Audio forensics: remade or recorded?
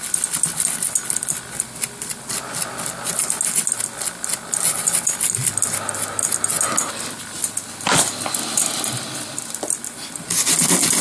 recorded